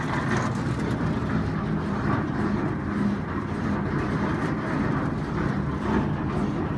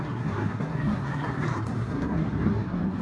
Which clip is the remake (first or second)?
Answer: second